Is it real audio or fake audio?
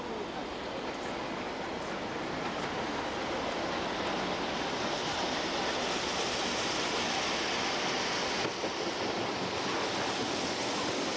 real